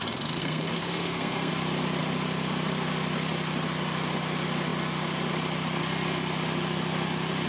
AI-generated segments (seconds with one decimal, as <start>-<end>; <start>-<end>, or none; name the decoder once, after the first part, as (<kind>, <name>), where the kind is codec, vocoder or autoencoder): 0.4-1.5 (codec, SNAC)

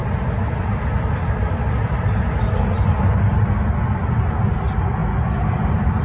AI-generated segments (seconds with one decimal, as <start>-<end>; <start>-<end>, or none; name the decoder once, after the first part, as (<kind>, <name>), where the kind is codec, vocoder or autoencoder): none

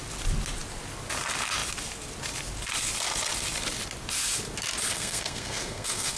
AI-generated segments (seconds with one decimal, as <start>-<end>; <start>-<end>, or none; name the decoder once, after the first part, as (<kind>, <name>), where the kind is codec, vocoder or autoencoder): 4.9-6.2 (codec, SNAC)

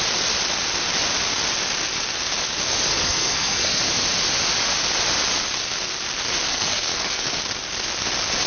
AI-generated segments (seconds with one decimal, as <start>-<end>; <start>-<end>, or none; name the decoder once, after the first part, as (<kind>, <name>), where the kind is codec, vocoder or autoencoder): 2.9-3.8 (codec, SNAC); 6.5-7.4

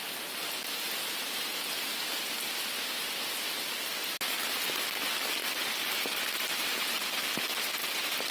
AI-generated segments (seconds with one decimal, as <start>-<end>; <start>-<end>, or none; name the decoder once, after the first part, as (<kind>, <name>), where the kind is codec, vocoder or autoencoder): none

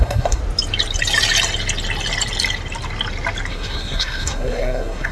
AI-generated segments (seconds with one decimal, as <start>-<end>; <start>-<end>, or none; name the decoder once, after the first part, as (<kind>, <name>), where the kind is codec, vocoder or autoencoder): 0.0-0.4 (codec, SNAC); 3.5-5.1

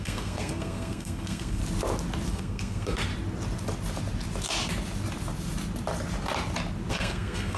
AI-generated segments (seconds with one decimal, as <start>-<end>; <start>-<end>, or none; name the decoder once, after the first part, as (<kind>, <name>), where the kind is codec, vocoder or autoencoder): 0.0-1.6 (codec, SNAC); 2.3-3.1; 6.9-7.6